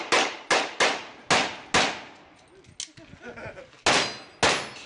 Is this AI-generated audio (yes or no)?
no